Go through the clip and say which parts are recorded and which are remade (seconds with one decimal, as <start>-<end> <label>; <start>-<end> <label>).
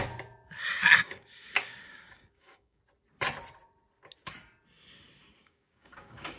0.0-0.8 recorded; 0.8-2.8 remade; 2.8-5.4 recorded; 5.4-6.4 remade